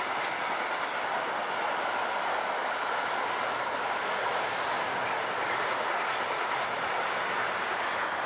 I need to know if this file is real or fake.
real